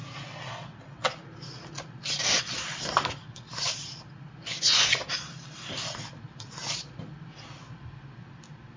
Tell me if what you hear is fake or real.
real